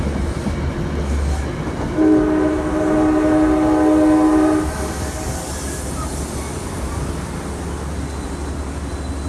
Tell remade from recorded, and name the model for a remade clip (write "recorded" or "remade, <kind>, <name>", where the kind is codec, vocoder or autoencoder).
recorded